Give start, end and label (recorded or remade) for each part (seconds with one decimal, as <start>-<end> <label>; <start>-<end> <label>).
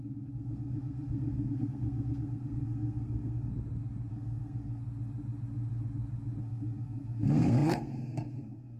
0.0-3.5 remade; 3.5-4.1 recorded; 4.1-4.8 remade; 4.8-6.4 recorded; 6.4-8.8 remade